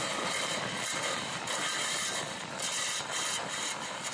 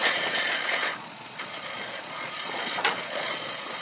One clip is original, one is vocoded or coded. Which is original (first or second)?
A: first